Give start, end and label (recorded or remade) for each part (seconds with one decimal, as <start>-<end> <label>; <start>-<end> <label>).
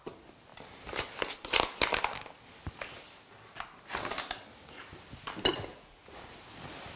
0.0-5.7 recorded; 5.7-6.3 remade; 6.3-7.0 recorded